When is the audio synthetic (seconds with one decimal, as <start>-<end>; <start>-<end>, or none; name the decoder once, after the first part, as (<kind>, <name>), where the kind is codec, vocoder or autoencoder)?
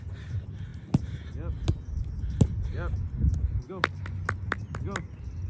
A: none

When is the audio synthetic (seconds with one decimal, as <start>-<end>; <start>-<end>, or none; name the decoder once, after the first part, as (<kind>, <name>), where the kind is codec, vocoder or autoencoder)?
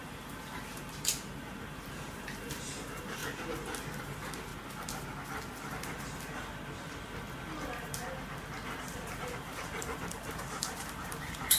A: 0.0-3.2 (vocoder, BigVGAN v2); 4.0-4.5; 9.2-11.6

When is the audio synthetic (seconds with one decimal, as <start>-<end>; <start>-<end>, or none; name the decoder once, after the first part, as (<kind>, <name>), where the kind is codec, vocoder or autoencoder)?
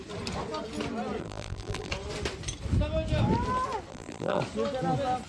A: 1.2-1.9 (vocoder, BigVGAN v2); 3.9-4.4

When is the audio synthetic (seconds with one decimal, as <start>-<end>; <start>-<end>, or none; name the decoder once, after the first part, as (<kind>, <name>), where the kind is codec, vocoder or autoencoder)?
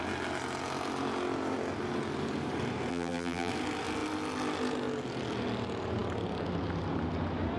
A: 2.9-3.5 (vocoder, BigVGAN v2)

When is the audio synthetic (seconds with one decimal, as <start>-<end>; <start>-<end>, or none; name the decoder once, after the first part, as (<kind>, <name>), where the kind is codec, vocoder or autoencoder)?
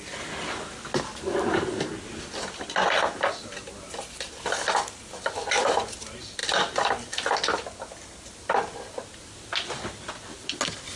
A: none